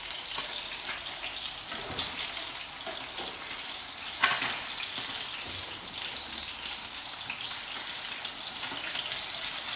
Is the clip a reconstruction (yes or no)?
no